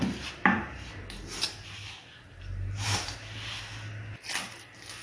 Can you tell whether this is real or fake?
real